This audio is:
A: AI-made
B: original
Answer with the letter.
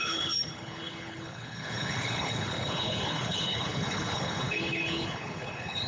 A